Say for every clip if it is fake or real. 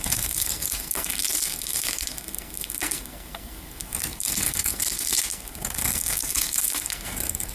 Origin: fake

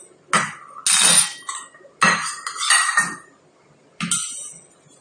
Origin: real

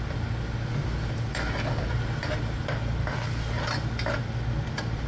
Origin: real